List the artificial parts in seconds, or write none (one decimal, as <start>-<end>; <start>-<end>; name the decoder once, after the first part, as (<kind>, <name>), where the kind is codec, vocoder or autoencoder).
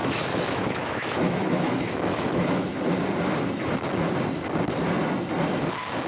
0.0-2.7 (autoencoder, DAC-VAE)